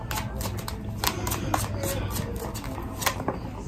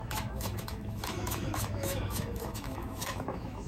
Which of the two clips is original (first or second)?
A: first